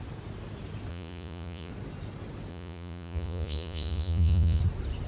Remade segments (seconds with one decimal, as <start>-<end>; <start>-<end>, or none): 0.9-1.7; 2.5-4.6